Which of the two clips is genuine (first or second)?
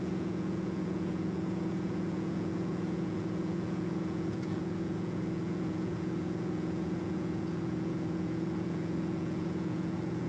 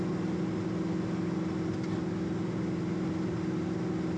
second